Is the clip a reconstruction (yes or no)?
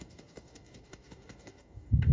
yes